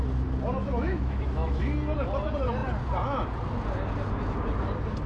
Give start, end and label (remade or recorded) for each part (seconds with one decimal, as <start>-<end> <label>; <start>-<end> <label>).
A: 0.0-0.6 recorded; 0.6-1.6 remade; 1.6-5.1 recorded